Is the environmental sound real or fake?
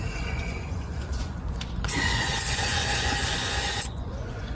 fake